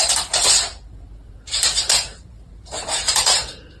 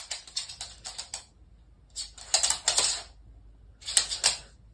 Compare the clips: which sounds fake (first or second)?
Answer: first